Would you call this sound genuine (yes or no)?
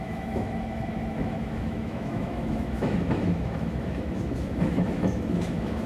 no